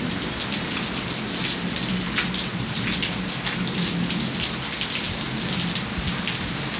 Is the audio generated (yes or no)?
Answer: no